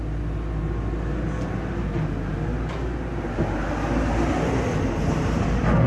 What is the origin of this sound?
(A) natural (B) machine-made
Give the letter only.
A